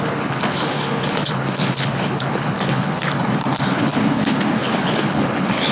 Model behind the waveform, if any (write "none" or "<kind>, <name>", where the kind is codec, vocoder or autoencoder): codec, HILCodec